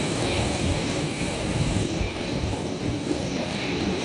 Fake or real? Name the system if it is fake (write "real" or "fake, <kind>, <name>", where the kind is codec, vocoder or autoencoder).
fake, codec, DAC